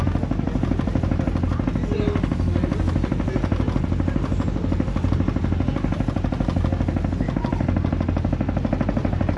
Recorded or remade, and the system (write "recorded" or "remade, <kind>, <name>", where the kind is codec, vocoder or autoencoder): recorded